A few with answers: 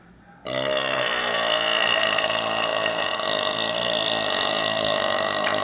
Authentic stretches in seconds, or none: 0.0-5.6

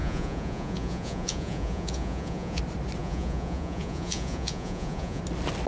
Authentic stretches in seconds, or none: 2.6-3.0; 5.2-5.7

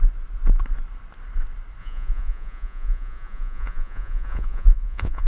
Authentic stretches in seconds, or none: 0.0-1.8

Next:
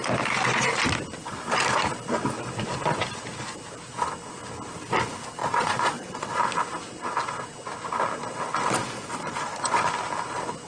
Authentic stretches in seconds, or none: 0.0-5.4; 6.4-8.8; 9.8-10.7

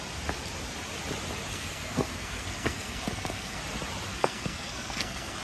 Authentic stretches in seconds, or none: 0.0-1.5; 3.6-4.1